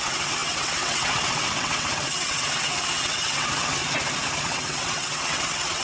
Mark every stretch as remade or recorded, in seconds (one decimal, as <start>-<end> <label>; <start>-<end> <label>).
0.0-3.8 remade; 3.8-4.4 recorded; 4.4-5.8 remade